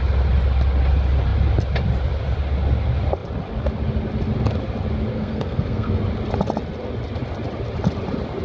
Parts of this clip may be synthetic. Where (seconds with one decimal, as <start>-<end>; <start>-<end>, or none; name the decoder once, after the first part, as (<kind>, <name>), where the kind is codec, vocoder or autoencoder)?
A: 5.1-6.0 (codec, SNAC)